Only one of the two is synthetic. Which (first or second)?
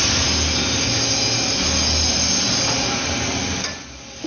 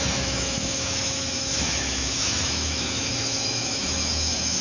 second